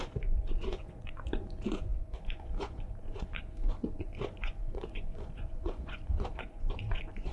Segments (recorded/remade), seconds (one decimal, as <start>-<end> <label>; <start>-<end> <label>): 0.0-7.3 remade